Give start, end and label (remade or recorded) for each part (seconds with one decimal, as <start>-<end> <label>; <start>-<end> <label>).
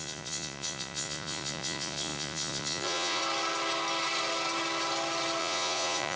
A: 0.0-3.2 remade; 3.2-5.4 recorded; 5.4-6.2 remade